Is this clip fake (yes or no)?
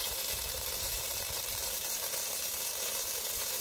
yes